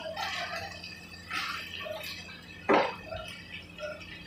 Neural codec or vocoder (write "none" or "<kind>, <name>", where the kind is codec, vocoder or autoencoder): none